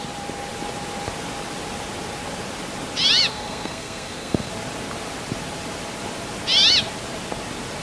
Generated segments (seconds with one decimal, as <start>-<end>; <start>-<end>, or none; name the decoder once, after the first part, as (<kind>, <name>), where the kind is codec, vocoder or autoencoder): 3.3-4.5 (codec, SNAC)